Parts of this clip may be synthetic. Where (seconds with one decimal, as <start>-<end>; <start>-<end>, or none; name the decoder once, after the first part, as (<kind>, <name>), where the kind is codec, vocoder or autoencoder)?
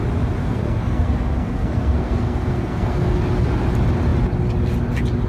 0.4-3.2 (codec, SNAC)